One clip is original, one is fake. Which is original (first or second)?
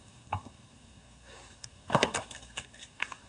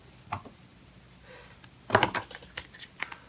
second